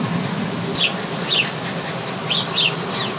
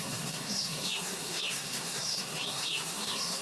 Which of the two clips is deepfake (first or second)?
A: second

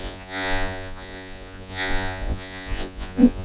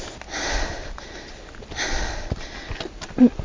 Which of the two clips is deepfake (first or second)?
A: first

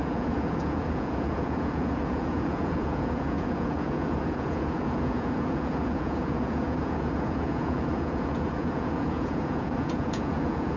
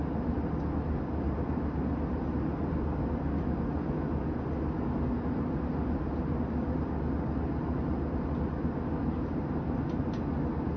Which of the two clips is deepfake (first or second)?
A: first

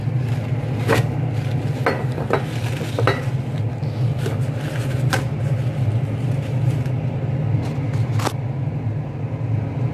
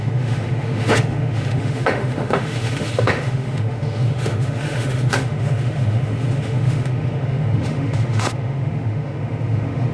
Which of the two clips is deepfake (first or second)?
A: second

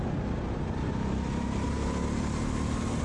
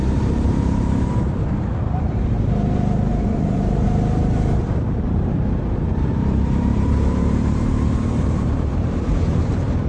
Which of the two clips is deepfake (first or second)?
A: second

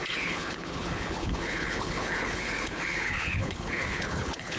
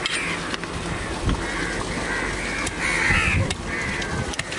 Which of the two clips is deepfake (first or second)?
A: first